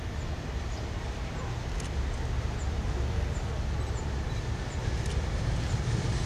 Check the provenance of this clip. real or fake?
real